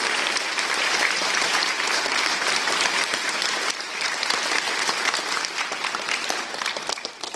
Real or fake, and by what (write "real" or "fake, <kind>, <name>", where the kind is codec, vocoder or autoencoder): fake, vocoder, BigVGAN v2